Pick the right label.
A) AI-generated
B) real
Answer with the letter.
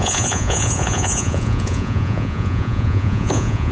A